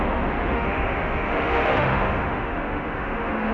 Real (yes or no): no